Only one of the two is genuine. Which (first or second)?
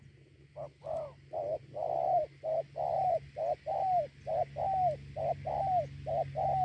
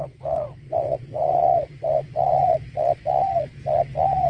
first